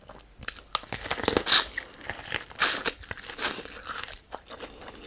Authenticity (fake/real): real